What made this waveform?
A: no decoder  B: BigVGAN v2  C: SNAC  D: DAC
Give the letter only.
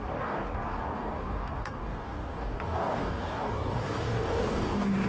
D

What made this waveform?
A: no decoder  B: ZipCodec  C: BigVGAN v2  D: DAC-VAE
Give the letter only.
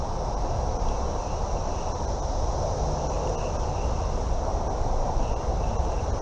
A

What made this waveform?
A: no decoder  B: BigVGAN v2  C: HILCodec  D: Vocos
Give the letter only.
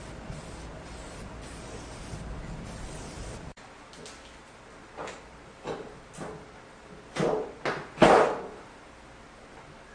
A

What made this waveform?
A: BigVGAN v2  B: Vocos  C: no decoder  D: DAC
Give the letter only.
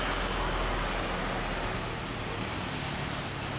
C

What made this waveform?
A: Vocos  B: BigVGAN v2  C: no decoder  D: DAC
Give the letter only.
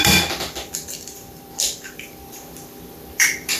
B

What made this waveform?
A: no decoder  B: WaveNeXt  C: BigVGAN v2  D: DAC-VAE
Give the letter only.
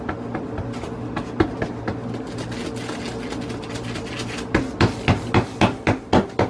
A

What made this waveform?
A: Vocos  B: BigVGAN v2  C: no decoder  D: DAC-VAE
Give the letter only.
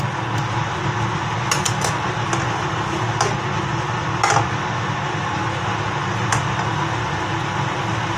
C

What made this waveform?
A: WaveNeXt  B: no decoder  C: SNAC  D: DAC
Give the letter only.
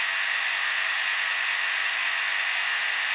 B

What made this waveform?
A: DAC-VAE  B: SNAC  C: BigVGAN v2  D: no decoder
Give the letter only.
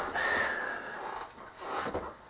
D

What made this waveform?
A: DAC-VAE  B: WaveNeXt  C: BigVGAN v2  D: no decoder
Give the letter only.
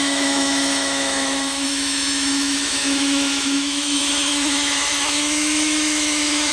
A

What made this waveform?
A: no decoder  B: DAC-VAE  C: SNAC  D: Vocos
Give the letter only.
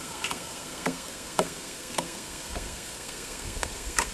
C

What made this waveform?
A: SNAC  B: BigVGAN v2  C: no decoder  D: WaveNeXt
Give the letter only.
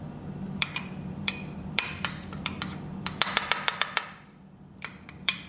B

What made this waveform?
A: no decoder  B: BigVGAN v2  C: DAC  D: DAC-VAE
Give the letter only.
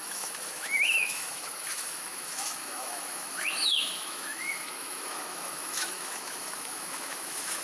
D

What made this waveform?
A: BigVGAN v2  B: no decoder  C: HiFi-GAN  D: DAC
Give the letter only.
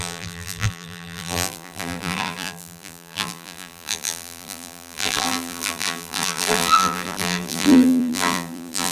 A